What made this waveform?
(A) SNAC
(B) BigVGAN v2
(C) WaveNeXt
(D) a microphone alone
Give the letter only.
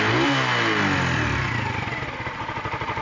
D